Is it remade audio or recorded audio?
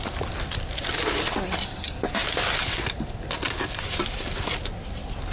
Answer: recorded